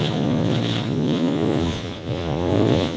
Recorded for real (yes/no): no